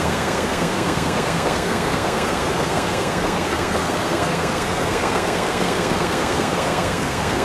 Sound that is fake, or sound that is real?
fake